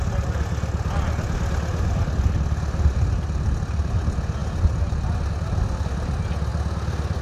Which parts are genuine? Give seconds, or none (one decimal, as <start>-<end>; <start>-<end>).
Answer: 0.0-7.2

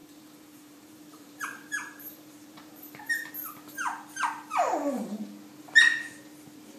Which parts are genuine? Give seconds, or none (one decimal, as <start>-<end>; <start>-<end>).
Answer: 3.3-4.5; 5.2-6.8

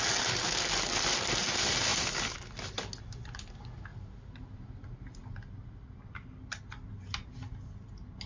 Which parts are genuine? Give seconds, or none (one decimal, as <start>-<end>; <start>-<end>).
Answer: 0.0-8.3

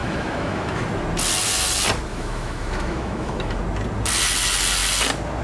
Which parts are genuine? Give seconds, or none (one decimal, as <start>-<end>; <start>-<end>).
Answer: 0.8-2.1; 3.6-5.4

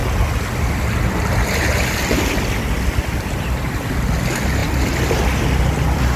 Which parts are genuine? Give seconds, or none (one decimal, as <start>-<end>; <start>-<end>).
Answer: 0.0-6.2